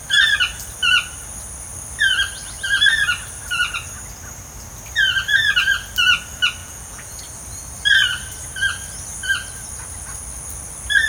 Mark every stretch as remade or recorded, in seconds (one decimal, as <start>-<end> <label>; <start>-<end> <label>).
0.0-6.6 recorded; 6.6-7.2 remade; 7.2-11.1 recorded